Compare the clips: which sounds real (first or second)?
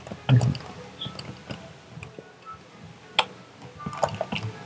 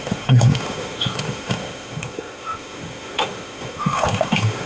first